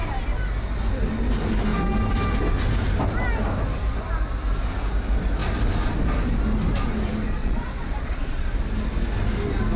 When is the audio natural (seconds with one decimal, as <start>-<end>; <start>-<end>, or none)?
0.0-7.4; 8.5-9.8